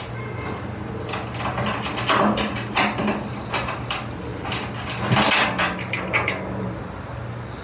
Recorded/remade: recorded